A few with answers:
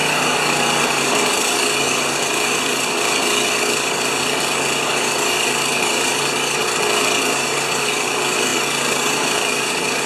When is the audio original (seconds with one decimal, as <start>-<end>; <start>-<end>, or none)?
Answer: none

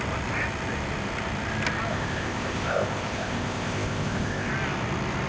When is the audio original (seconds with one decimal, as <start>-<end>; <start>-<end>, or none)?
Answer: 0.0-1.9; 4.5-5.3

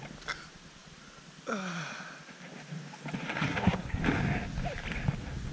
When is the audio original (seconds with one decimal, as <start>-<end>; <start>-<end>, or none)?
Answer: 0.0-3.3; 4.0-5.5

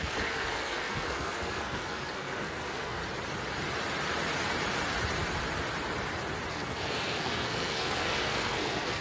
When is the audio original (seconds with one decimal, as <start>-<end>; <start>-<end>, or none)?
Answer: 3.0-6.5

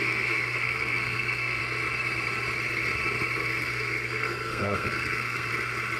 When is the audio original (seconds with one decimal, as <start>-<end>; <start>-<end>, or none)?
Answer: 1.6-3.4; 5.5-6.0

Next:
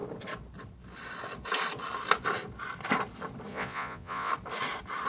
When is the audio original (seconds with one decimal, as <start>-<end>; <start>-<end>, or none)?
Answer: 0.0-3.5; 4.3-5.1